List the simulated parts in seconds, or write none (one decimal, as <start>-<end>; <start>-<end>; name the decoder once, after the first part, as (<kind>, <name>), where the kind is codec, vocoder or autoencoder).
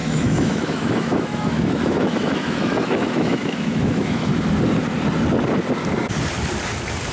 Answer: 0.0-4.3 (autoencoder, DAC-VAE)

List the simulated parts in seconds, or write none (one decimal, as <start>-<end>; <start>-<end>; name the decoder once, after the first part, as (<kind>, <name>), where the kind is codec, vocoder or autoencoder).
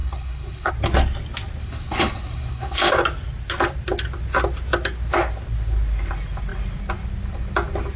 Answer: 0.0-0.7 (codec, HILCodec); 1.6-2.9